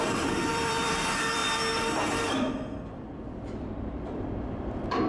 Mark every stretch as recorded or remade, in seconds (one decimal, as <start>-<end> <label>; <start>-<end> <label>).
0.0-5.1 remade